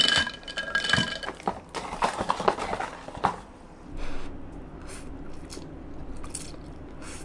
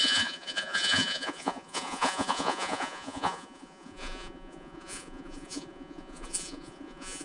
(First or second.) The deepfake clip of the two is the second